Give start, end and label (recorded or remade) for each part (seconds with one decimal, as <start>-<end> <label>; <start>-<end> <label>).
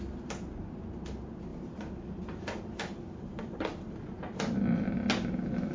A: 0.0-1.5 recorded; 1.5-4.9 remade; 4.9-5.7 recorded